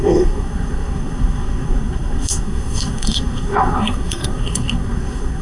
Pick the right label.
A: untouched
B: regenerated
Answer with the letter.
B